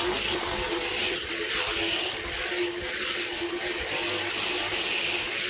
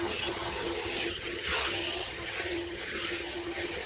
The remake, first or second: second